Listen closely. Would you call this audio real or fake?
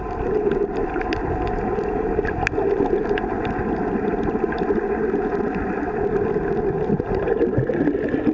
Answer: real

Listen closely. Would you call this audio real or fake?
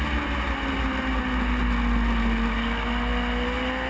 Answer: real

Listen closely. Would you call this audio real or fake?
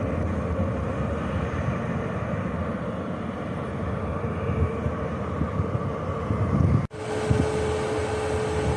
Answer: real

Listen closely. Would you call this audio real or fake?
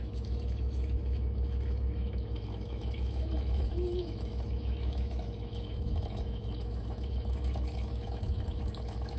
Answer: fake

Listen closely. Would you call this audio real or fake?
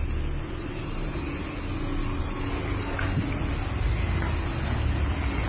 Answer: real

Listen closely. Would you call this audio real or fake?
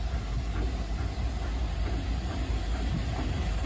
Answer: real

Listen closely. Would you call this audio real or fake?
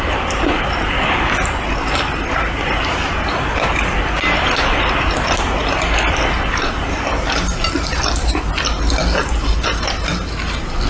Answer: real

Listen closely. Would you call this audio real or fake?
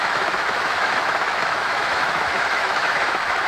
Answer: fake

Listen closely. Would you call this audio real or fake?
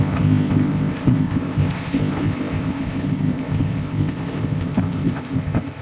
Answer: fake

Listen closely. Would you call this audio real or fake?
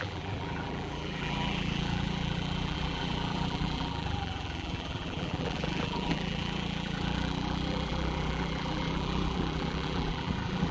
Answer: fake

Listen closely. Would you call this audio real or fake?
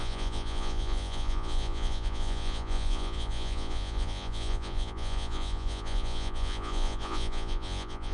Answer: fake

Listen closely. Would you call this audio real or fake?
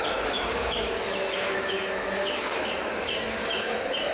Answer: fake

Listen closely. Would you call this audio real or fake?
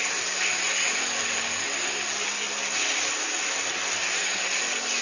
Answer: real